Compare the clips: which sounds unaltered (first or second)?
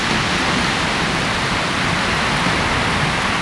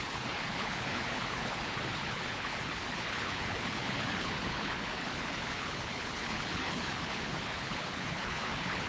first